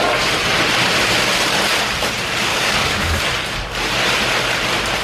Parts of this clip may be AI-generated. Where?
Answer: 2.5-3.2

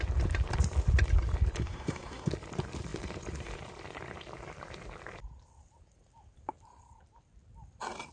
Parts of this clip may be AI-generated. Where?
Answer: 1.6-2.3

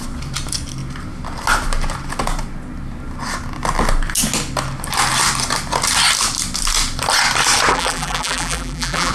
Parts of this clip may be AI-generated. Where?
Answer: 7.7-9.1

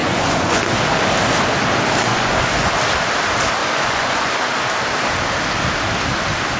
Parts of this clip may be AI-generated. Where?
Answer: 0.0-0.6; 2.1-2.7; 3.6-4.5

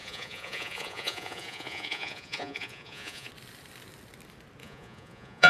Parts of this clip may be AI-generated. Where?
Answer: 0.0-3.3; 4.6-5.5

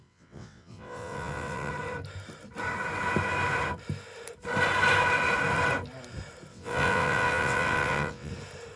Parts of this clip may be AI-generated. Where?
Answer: 0.0-1.7; 6.5-8.3